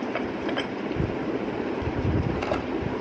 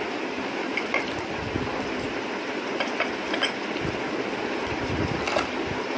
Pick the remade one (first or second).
first